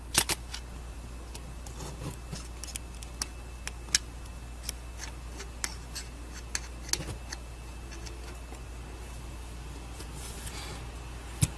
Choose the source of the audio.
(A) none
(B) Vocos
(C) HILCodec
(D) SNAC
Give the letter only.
A